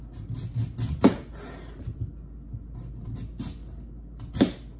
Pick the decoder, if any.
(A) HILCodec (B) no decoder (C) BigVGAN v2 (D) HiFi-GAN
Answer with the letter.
B